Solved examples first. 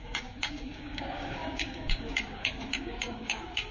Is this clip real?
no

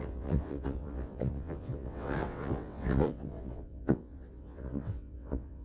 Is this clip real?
no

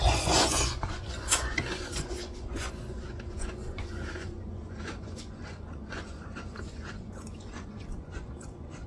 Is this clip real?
no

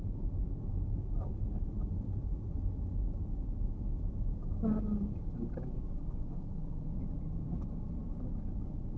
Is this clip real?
yes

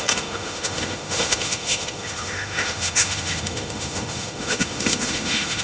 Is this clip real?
no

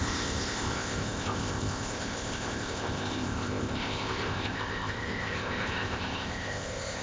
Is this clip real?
no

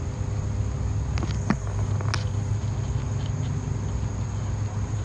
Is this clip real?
yes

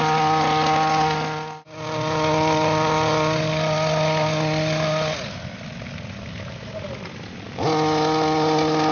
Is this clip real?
yes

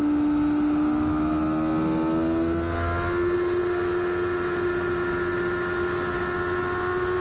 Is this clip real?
yes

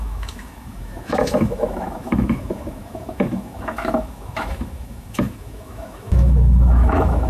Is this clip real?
no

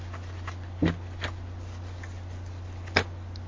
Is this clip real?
yes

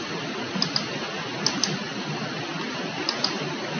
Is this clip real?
yes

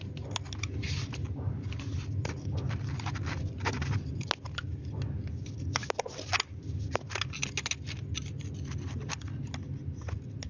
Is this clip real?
yes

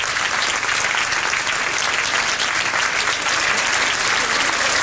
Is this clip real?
yes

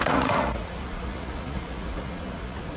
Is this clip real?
no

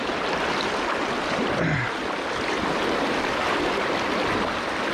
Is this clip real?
yes